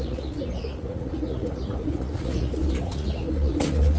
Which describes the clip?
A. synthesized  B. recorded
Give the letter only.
A